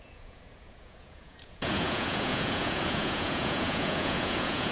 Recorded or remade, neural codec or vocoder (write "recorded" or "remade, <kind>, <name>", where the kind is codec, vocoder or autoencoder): remade, vocoder, Vocos